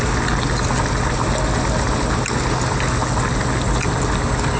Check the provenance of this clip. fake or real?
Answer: real